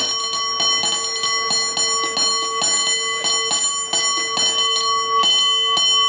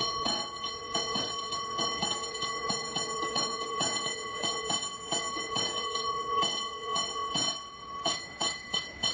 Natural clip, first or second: first